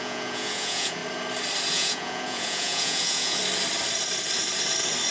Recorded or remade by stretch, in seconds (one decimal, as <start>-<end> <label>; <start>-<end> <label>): 0.0-1.0 remade; 1.0-1.7 recorded; 1.7-3.4 remade; 3.4-5.1 recorded